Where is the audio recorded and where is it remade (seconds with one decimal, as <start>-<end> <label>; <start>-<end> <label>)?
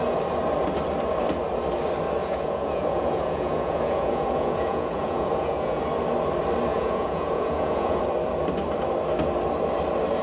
0.0-2.2 recorded; 2.2-5.8 remade; 5.8-6.7 recorded; 6.7-8.0 remade; 8.0-10.2 recorded